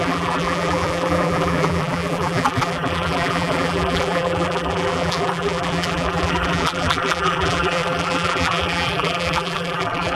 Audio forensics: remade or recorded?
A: remade